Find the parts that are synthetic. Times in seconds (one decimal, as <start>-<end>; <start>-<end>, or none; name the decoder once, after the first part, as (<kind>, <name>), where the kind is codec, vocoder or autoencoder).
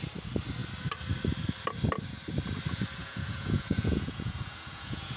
3.0-5.2 (vocoder, Vocos)